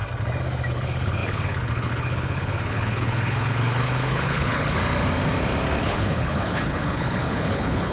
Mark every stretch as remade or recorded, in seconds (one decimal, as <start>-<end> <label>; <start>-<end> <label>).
0.0-0.7 recorded; 0.7-4.8 remade; 4.8-5.8 recorded; 5.8-7.9 remade